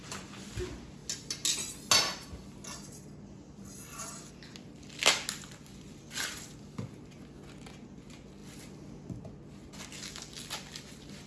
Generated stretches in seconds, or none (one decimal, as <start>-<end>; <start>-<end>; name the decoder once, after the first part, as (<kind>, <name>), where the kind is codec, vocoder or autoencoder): 5.7-6.4 (vocoder, BigVGAN v2)